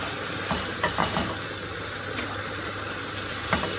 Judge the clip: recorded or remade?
recorded